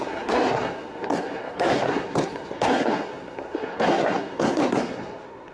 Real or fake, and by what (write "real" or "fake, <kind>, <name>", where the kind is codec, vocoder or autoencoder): fake, codec, SNAC